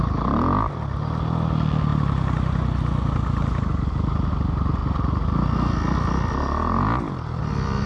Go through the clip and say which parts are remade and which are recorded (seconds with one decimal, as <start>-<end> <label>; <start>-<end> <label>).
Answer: 0.0-7.9 recorded